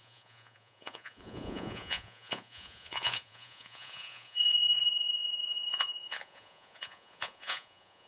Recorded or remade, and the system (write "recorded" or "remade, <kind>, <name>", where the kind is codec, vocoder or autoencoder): remade, vocoder, Vocos